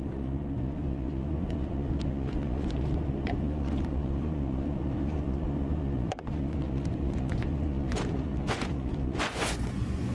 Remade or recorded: remade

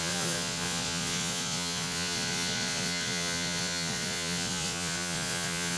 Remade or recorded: remade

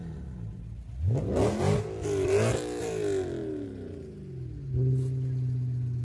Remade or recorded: recorded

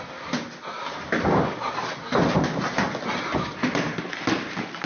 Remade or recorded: recorded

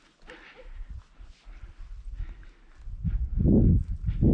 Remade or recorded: recorded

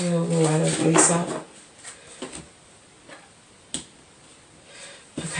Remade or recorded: recorded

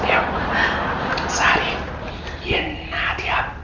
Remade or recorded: recorded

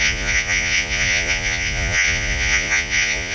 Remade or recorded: remade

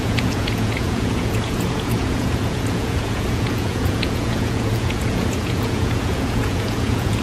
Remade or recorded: remade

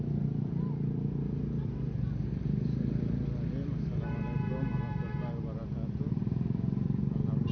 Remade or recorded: recorded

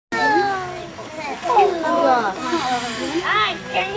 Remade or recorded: recorded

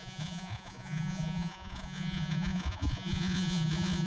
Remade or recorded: remade